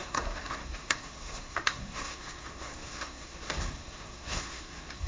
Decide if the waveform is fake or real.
fake